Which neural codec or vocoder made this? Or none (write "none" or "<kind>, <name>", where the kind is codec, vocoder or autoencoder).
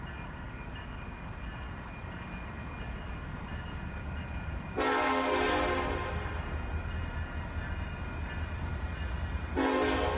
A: none